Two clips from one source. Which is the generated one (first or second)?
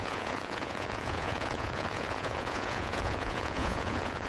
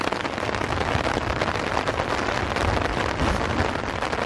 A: first